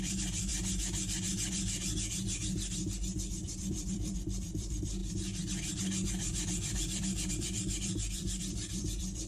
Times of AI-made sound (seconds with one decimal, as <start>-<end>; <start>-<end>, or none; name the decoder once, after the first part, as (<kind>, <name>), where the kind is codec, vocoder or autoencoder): 0.0-0.5 (vocoder, BigVGAN v2); 3.3-5.0; 7.3-9.3